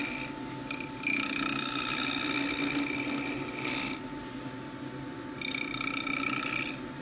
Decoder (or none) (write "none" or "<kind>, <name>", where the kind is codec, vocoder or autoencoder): none